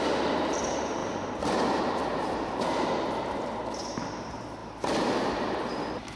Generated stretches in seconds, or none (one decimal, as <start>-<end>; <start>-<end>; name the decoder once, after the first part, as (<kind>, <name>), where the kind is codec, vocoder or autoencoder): 0.0-6.2 (vocoder, BigVGAN v2)